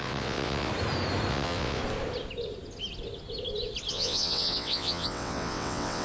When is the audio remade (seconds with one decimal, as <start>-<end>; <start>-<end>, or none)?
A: 0.0-0.7; 1.3-1.8; 3.9-6.0